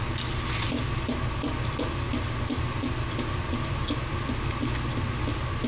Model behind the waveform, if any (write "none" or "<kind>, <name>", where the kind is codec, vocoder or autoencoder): none